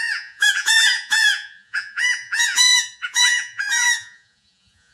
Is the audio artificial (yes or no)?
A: yes